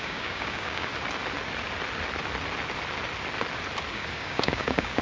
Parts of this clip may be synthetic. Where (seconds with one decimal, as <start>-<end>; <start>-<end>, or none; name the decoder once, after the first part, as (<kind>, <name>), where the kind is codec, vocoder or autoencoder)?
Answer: 0.0-0.9 (codec, DAC); 3.9-5.0